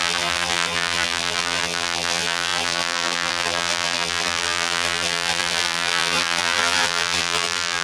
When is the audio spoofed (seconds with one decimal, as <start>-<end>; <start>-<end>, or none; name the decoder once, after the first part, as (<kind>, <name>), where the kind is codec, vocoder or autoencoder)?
0.0-7.8 (vocoder, BigVGAN v2)